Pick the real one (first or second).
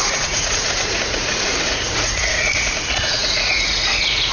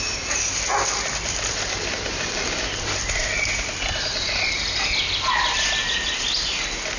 second